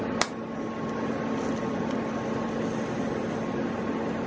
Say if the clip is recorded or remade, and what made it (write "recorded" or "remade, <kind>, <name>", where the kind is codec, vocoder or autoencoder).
recorded